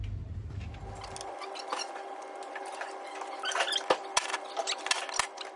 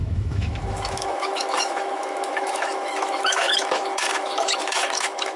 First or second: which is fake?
second